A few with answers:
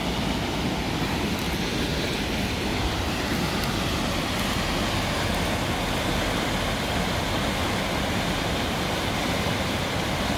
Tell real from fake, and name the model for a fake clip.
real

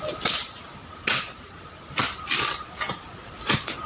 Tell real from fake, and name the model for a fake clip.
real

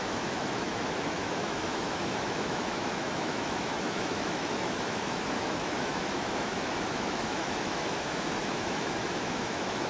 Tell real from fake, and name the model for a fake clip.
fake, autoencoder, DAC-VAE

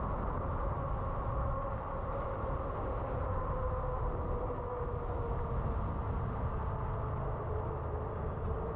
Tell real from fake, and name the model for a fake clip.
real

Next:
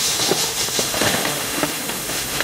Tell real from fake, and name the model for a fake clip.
fake, autoencoder, DAC-VAE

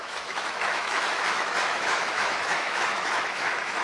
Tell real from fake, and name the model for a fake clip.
fake, autoencoder, DAC-VAE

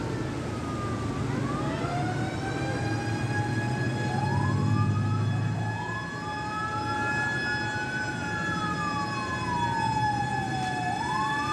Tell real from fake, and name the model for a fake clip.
real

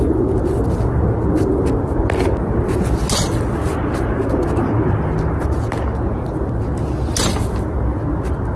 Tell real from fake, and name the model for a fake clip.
real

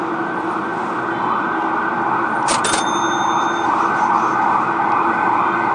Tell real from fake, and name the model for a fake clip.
real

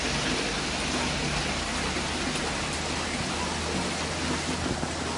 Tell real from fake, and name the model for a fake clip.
real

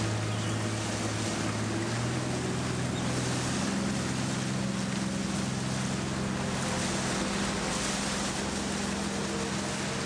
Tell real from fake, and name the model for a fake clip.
real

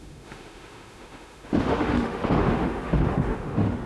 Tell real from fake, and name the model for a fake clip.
fake, autoencoder, DAC-VAE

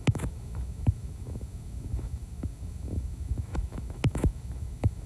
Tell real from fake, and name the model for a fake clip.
fake, autoencoder, DAC-VAE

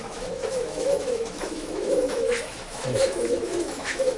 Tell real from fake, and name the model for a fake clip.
fake, autoencoder, DAC-VAE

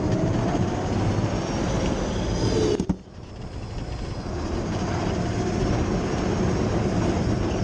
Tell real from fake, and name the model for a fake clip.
real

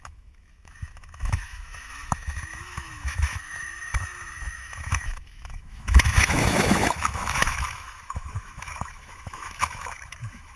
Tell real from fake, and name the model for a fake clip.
fake, autoencoder, DAC-VAE